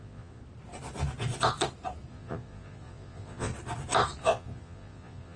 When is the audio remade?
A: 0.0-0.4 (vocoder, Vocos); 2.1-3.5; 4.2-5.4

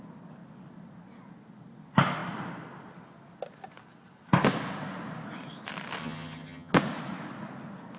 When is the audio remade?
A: 6.0-6.7 (vocoder, HiFi-GAN)

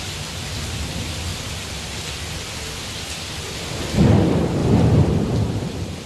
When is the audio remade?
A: 4.6-5.1 (vocoder, BigVGAN v2)

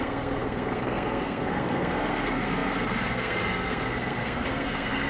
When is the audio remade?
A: 0.0-5.1 (codec, SNAC)

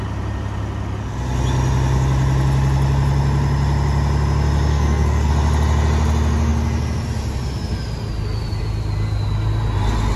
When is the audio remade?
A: 4.7-5.3 (codec, SNAC)

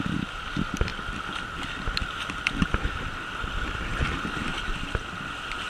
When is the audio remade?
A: none

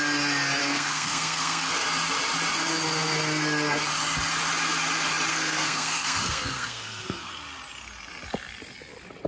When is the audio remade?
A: 0.6-1.7 (codec, SNAC); 5.3-7.3